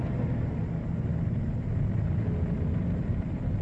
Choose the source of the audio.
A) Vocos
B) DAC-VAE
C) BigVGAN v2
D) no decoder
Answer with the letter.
D